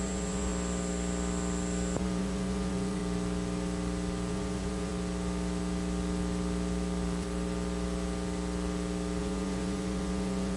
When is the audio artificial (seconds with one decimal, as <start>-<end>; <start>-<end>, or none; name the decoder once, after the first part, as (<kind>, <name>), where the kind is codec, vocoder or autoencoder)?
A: 0.0-0.5 (vocoder, Vocos); 2.2-3.0; 4.3-4.9; 9.2-10.6